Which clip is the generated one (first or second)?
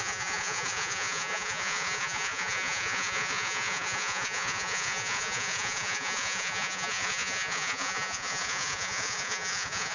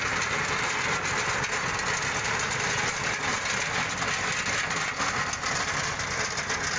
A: first